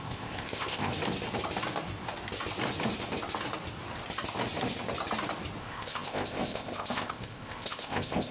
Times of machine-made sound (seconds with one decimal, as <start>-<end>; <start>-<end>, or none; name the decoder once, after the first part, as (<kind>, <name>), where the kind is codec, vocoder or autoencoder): 0.0-0.9 (codec, ZipCodec); 5.6-8.3